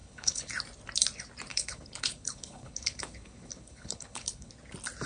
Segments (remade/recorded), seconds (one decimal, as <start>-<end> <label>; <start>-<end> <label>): 0.0-0.5 remade; 0.5-1.5 recorded; 1.5-4.5 remade; 4.5-5.1 recorded